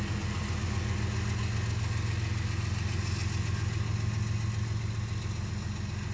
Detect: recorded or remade recorded